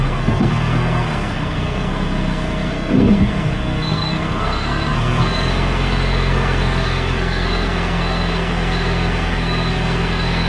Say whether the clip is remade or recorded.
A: remade